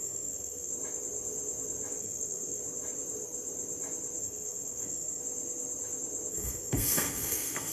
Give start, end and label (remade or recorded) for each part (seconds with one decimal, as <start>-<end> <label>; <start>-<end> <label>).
0.0-0.7 remade; 0.7-2.0 recorded; 2.0-2.6 remade; 2.6-4.2 recorded; 4.2-5.2 remade; 5.2-6.3 recorded; 6.3-7.7 remade